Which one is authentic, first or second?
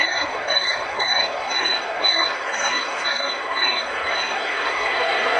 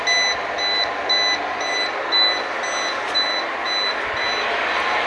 second